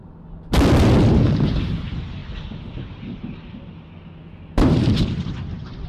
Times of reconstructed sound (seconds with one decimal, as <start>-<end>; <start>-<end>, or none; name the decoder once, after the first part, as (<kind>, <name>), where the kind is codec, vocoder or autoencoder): 1.1-2.2 (vocoder, BigVGAN v2); 4.5-5.9